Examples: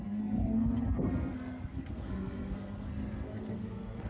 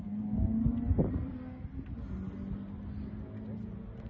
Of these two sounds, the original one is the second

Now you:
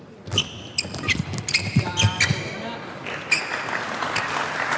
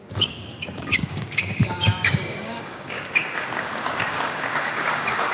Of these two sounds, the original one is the first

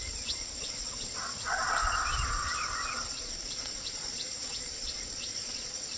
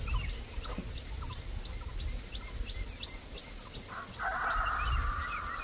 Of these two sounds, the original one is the second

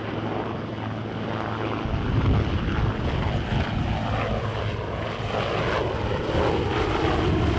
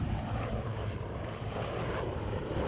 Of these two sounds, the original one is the first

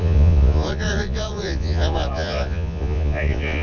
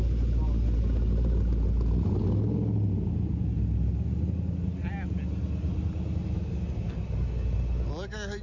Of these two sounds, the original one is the second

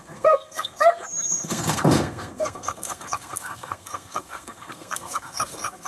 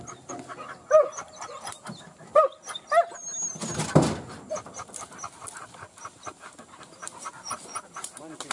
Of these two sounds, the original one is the second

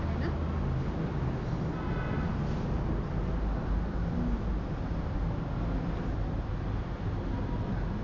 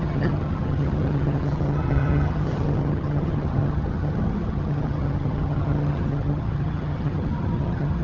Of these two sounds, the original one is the first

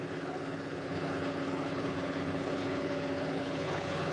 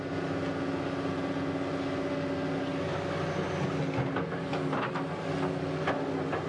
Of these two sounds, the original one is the second